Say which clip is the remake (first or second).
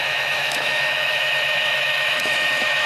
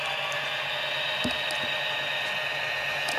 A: first